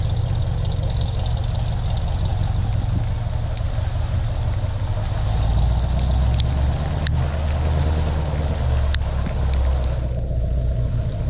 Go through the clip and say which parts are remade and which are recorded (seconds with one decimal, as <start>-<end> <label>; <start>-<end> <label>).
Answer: 0.0-11.3 recorded